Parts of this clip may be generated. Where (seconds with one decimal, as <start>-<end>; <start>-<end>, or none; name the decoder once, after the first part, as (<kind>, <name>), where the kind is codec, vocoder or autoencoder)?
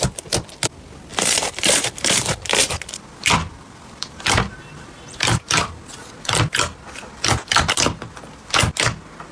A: 1.1-6.1 (vocoder, BigVGAN v2)